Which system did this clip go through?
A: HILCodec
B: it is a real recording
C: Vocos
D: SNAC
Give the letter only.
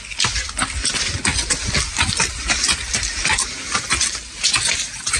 B